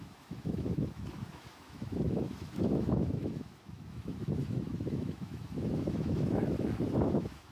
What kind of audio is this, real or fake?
fake